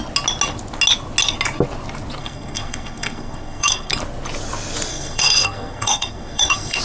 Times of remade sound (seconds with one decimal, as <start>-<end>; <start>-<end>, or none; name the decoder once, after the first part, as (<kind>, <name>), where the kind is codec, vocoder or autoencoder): 2.2-3.9 (codec, SNAC); 4.9-6.8